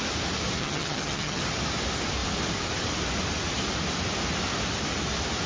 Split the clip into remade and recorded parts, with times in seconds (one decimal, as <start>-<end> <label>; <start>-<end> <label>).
0.0-0.6 recorded; 0.6-1.4 remade; 1.4-5.5 recorded